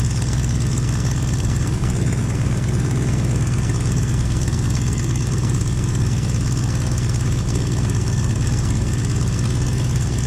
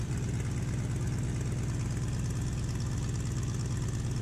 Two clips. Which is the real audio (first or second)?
second